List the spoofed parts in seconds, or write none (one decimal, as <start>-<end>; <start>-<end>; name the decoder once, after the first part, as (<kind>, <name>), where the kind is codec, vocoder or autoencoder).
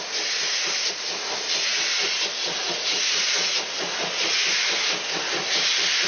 2.6-3.6 (vocoder, Vocos)